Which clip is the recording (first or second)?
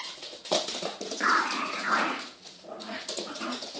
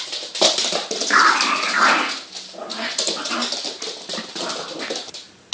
second